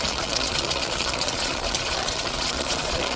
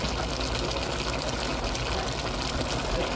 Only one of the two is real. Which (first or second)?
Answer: second